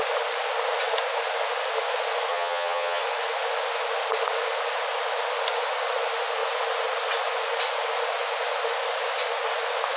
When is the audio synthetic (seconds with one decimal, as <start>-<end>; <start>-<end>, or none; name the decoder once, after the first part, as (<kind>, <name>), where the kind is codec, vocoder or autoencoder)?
2.3-3.0 (vocoder, HiFi-GAN)